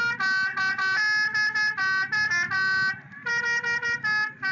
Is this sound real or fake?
real